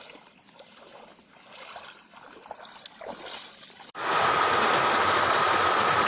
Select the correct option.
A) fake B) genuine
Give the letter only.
B